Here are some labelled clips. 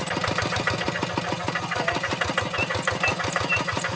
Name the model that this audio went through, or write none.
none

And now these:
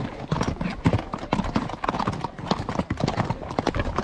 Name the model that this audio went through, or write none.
none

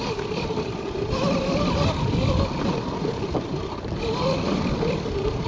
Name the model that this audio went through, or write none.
vocoder, BigVGAN v2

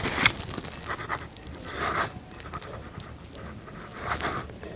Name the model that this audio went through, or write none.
none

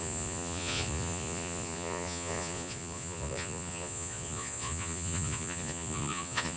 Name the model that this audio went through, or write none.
vocoder, Vocos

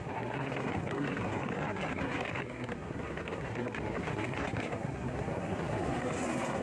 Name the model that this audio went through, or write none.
codec, SNAC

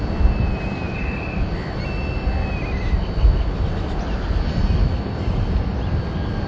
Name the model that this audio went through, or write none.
none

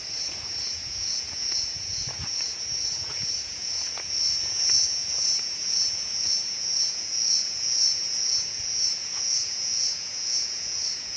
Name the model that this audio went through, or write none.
vocoder, Vocos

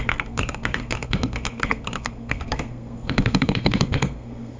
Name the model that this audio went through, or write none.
codec, SNAC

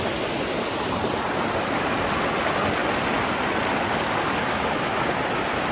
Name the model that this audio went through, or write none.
none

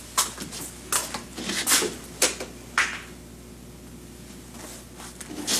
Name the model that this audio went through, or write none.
none